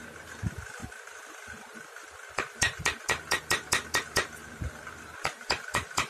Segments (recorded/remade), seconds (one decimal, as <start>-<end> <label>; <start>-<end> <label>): 0.0-6.1 remade